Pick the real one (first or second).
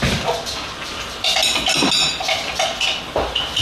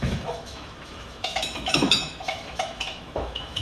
first